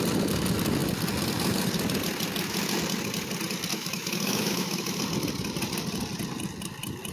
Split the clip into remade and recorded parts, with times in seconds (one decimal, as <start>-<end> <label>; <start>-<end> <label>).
0.0-3.7 recorded; 3.7-5.0 remade; 5.0-7.1 recorded

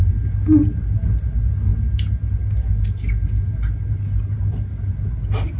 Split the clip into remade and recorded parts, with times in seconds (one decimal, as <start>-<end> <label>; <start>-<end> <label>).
0.0-5.6 recorded

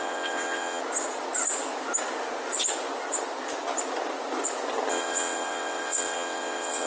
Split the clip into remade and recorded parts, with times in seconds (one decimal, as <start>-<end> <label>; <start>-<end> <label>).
0.0-0.8 remade; 0.8-4.9 recorded; 4.9-6.9 remade

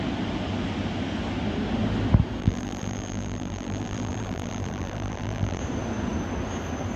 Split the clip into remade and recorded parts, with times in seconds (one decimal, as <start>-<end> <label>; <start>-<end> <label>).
0.0-2.4 recorded; 2.4-5.6 remade; 5.6-7.0 recorded